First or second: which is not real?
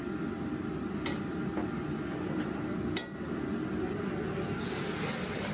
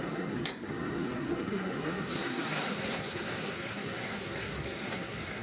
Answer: second